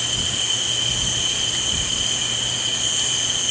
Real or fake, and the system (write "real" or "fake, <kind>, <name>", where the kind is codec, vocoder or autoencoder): real